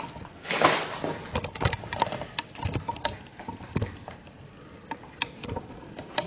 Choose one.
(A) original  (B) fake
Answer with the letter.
B